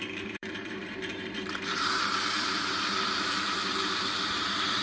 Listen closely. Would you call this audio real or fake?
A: fake